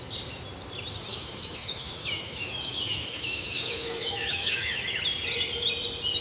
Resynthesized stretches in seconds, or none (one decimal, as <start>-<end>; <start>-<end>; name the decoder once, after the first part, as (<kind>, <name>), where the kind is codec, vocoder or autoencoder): 1.1-4.8 (autoencoder, DAC-VAE)